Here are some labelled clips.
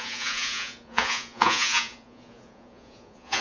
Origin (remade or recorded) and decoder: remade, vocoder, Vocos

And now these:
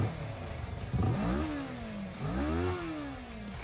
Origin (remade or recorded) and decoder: recorded